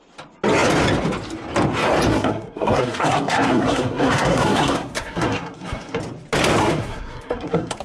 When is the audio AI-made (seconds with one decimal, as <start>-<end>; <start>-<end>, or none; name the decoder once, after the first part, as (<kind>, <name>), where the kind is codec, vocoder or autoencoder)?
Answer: 2.1-6.0 (codec, SNAC); 6.6-7.8